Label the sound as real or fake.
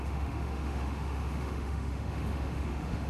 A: fake